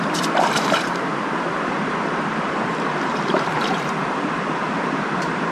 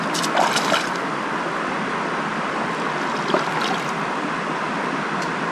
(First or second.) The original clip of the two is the second